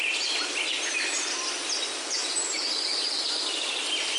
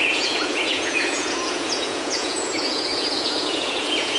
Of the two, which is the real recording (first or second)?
first